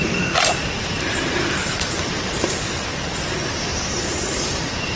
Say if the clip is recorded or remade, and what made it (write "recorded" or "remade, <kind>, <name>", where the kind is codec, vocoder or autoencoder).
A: remade, vocoder, BigVGAN v2